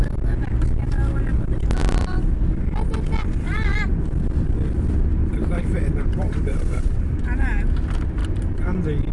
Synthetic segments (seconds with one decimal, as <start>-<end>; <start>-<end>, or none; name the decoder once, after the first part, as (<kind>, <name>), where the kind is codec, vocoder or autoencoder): 5.2-7.2 (vocoder, BigVGAN v2)